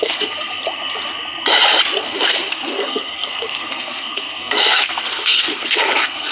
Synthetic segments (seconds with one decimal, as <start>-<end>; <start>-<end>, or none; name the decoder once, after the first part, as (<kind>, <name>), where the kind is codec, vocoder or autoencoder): 0.0-0.6 (codec, SNAC); 2.0-6.3

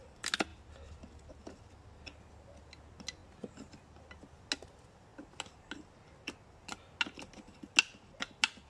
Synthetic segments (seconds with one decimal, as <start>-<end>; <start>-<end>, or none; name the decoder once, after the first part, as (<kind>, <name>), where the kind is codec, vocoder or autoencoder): none

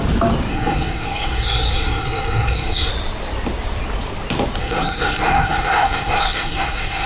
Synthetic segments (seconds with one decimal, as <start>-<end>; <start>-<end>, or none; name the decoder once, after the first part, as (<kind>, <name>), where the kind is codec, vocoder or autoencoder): 0.5-2.9 (codec, SNAC); 4.6-7.1